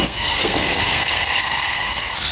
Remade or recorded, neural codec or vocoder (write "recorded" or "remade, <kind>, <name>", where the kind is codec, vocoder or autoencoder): remade, codec, SNAC